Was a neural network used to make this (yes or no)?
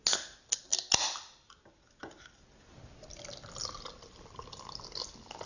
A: no